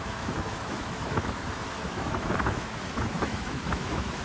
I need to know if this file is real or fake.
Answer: fake